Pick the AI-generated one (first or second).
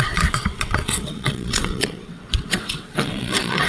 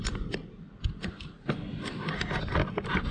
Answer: first